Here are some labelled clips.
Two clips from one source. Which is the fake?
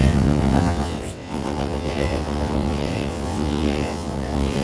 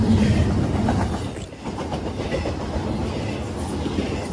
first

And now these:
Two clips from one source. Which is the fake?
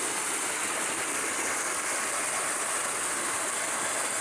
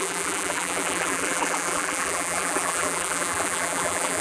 second